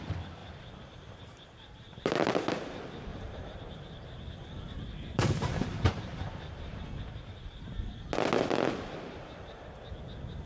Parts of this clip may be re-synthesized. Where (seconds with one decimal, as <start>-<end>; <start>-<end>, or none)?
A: 0.4-2.3; 3.1-6.8